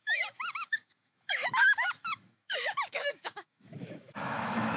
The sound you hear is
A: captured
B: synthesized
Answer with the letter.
B